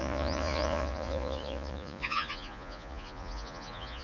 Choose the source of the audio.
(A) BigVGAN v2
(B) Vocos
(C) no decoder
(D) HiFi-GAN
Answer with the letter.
B